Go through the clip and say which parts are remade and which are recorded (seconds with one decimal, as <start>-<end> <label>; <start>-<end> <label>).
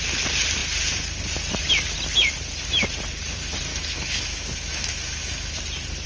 0.0-3.7 recorded; 3.7-5.6 remade; 5.6-6.1 recorded